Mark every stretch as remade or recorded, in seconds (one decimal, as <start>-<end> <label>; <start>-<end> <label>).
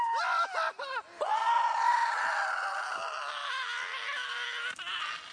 0.0-5.3 recorded